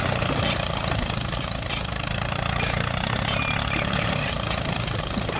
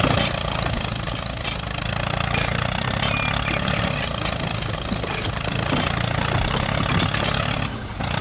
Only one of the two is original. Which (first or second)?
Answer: second